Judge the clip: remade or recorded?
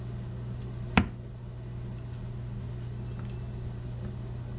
recorded